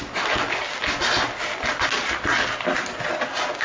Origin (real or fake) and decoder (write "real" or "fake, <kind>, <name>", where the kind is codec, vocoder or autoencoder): real